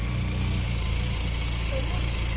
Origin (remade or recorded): recorded